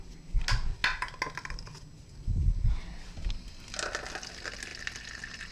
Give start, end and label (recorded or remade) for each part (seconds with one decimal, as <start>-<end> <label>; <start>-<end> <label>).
0.0-5.5 recorded